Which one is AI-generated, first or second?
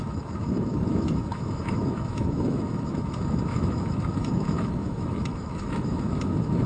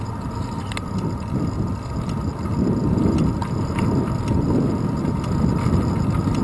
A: first